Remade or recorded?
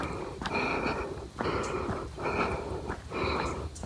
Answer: recorded